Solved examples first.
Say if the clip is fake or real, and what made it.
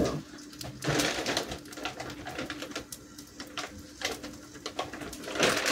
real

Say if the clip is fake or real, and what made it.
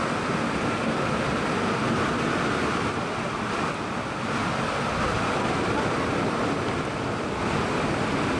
real